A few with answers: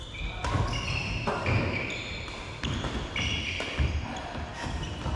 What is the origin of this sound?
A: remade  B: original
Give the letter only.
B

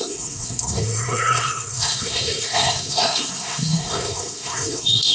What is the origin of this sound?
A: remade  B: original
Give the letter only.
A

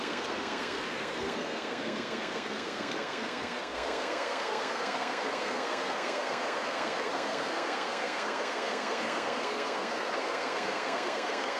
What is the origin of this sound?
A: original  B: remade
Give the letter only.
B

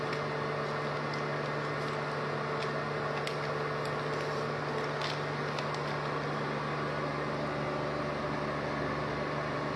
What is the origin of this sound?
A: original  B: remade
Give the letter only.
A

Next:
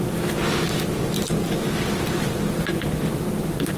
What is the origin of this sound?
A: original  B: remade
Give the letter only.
A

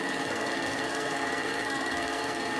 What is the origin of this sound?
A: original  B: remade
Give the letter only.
B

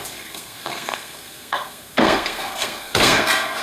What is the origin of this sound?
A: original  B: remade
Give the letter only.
B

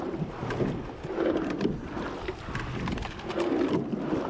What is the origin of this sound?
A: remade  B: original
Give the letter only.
B